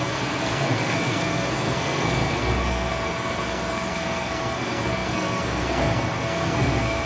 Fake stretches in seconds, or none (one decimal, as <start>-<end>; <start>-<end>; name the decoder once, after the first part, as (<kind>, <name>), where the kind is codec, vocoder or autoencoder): 0.0-7.1 (codec, SNAC)